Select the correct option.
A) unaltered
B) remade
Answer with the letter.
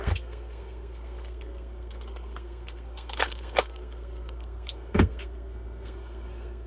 B